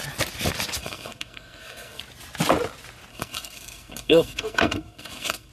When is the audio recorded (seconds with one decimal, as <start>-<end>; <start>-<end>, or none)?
0.0-0.8; 2.0-3.1